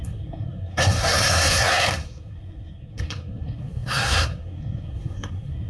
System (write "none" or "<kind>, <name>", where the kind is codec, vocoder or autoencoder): codec, SNAC